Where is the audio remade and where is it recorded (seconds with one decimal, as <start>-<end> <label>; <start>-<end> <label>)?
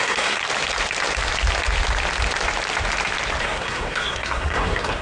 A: 0.0-0.4 remade; 0.4-3.4 recorded; 3.4-5.0 remade